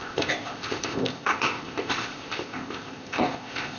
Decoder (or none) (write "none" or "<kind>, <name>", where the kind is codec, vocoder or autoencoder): codec, ZipCodec